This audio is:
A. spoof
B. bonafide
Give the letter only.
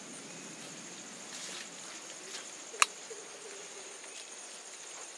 B